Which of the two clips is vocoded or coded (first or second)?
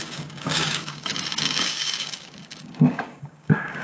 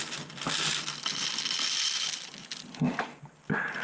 first